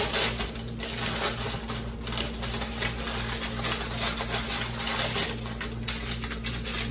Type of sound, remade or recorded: recorded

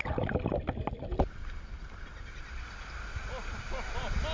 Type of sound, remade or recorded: recorded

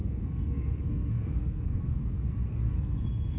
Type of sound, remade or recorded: remade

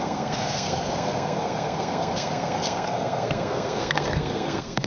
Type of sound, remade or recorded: remade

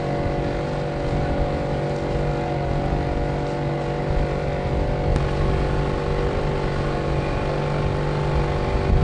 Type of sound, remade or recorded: recorded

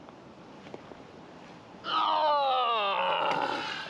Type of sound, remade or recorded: recorded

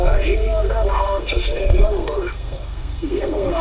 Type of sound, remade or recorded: remade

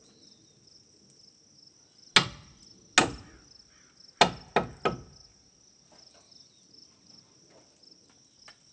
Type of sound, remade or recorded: recorded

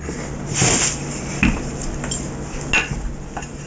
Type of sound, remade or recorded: recorded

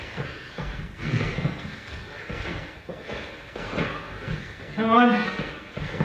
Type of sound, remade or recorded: remade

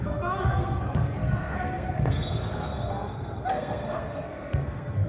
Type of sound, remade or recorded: remade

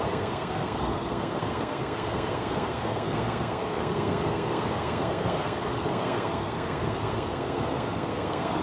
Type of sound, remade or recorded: remade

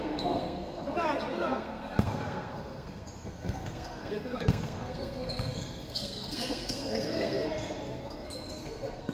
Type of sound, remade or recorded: remade